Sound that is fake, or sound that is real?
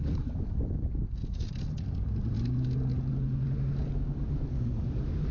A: real